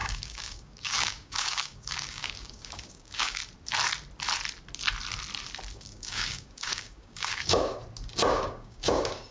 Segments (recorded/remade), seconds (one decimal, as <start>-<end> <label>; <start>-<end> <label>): 0.0-3.4 remade; 3.4-5.7 recorded; 5.7-7.8 remade; 7.8-8.3 recorded; 8.3-9.3 remade